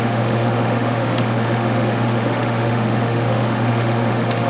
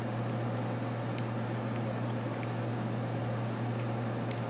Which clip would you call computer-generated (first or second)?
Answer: first